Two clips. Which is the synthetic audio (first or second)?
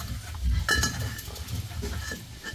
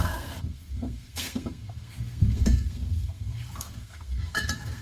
second